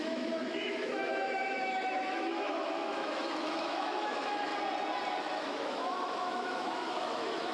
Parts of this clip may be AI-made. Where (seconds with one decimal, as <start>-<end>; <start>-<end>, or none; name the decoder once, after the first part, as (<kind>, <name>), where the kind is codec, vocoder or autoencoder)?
0.0-4.5 (autoencoder, DAC-VAE); 5.2-7.5

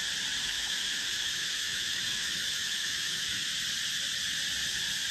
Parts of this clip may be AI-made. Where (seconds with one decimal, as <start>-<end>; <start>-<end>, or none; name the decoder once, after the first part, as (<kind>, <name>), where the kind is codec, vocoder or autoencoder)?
0.4-3.5 (autoencoder, DAC-VAE)